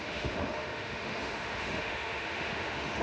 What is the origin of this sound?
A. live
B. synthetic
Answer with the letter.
B